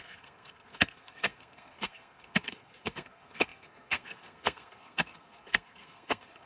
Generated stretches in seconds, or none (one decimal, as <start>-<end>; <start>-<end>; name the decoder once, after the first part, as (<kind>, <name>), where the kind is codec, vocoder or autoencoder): 0.0-6.5 (codec, SNAC)